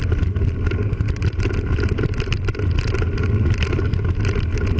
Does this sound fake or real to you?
real